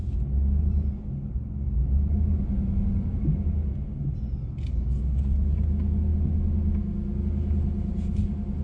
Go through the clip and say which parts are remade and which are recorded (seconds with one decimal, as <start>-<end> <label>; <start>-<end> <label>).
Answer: 0.0-8.6 recorded